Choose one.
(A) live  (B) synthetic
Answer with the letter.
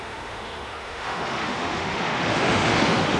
B